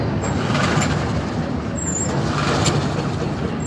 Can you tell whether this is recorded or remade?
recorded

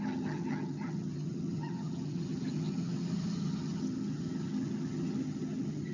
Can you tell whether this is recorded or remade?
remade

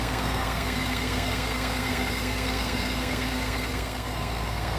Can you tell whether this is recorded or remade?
remade